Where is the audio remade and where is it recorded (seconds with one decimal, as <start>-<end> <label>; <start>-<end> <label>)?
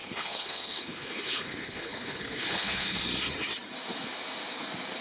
0.0-3.0 remade; 3.0-5.0 recorded